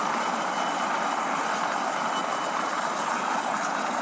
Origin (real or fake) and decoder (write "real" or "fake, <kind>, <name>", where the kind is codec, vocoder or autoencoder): real